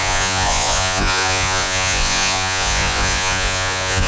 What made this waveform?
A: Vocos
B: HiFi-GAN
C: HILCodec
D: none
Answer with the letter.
A